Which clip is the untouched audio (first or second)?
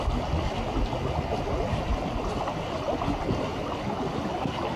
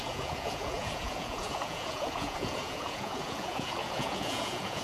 first